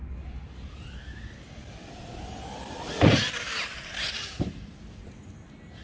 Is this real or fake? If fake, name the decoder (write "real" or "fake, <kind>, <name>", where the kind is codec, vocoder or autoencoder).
real